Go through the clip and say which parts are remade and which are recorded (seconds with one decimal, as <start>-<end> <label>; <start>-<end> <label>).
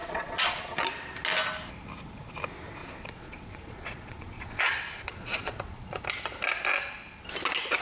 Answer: 0.0-0.6 remade; 0.6-2.8 recorded; 2.8-6.0 remade; 6.0-7.8 recorded